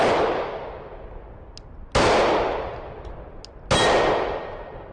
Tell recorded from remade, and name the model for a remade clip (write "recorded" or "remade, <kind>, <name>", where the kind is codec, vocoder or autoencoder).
recorded